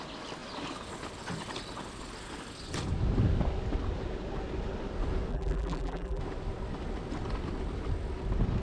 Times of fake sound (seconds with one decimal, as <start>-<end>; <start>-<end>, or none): 5.3-6.2